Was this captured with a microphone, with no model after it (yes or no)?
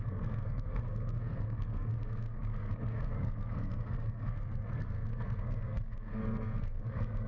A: no